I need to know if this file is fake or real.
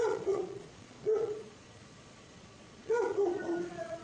fake